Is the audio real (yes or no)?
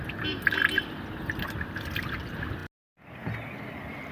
yes